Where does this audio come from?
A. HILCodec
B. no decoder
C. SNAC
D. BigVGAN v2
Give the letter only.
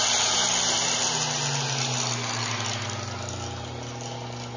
B